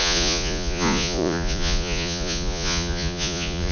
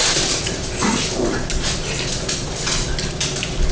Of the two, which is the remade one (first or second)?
first